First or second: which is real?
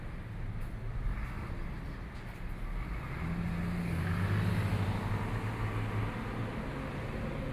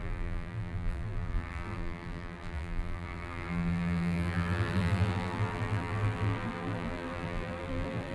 first